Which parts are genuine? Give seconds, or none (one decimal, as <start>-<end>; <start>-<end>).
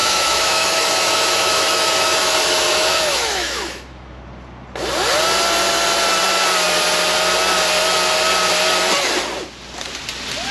4.2-10.5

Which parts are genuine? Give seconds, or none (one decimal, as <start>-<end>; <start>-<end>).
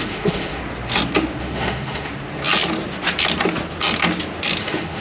0.6-1.4; 2.1-4.6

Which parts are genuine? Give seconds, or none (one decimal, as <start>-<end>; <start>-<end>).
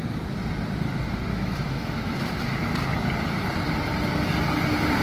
0.0-1.3; 2.6-5.0